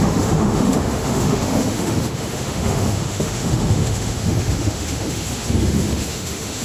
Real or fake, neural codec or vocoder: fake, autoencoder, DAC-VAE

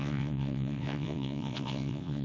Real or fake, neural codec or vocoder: fake, vocoder, WaveNeXt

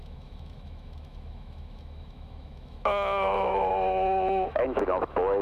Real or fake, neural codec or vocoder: fake, autoencoder, DAC-VAE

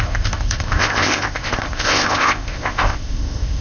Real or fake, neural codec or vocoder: fake, codec, ZipCodec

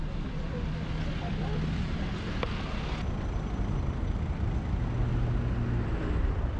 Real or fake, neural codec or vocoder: real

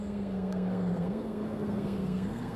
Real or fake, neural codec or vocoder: fake, codec, SNAC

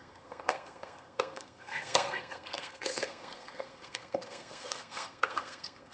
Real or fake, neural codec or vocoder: fake, codec, SNAC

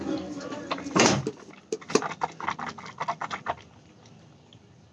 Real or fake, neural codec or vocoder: real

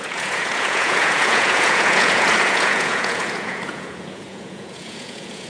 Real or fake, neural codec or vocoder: fake, vocoder, Vocos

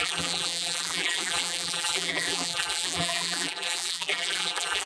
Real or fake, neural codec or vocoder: fake, vocoder, BigVGAN v2